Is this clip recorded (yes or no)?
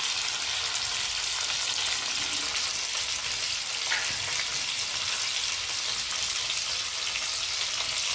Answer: yes